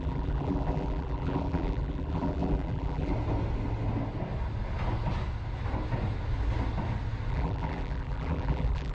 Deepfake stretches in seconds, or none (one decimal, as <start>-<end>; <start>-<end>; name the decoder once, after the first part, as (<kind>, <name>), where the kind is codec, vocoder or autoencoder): 0.0-3.1 (vocoder, BigVGAN v2); 7.3-8.9